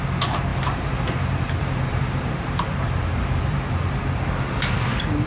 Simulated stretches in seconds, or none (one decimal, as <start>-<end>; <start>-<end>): 0.5-3.7